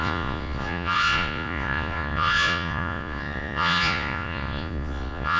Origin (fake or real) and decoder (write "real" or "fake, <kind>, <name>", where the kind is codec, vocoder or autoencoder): fake, vocoder, Vocos